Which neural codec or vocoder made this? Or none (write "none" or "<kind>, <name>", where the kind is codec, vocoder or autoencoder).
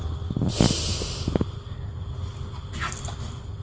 none